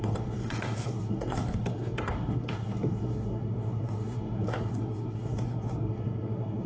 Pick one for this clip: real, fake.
fake